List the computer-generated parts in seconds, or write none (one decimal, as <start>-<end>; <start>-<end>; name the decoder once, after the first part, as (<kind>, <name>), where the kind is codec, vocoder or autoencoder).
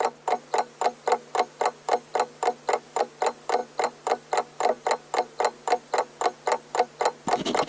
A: none